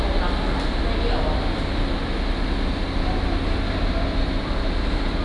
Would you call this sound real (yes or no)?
yes